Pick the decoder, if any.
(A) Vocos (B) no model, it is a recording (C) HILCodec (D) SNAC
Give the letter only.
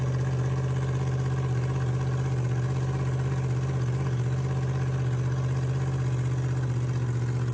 B